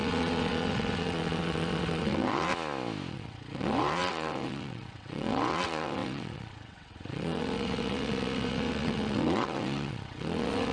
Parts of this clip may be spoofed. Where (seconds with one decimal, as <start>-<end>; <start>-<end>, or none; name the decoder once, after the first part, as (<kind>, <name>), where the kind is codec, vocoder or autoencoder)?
0.0-2.5 (vocoder, WaveNeXt); 3.1-10.7